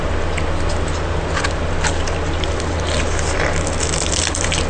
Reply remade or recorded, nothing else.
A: recorded